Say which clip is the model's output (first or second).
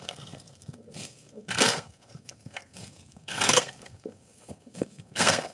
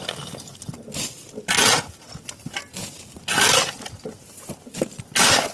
first